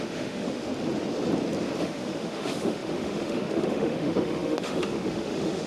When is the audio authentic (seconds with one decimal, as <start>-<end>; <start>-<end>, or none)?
0.7-1.8